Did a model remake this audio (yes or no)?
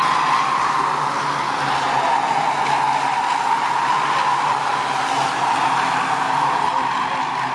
no